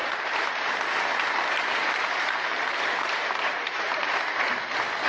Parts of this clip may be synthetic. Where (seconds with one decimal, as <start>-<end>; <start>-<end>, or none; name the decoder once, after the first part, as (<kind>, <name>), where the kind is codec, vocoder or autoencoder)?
0.0-0.7 (vocoder, BigVGAN v2); 1.1-4.2